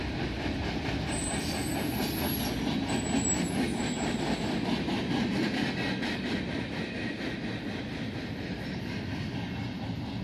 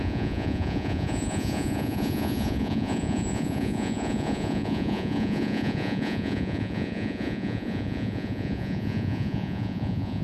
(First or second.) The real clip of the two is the first